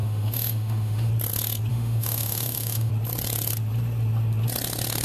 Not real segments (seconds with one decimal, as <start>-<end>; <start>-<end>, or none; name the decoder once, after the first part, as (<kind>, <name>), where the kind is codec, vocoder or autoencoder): 0.0-1.1 (autoencoder, DAC-VAE); 1.7-2.9